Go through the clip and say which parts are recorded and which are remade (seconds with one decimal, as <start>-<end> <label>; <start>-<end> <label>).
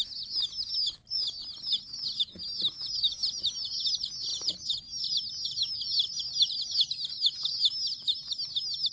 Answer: 0.0-8.9 recorded